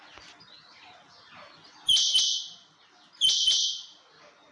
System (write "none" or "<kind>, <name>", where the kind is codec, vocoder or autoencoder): none